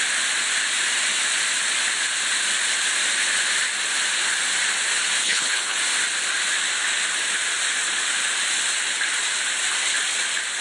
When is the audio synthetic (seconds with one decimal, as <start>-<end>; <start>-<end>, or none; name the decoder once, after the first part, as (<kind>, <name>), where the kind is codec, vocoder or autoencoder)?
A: 5.2-5.8 (codec, HILCodec)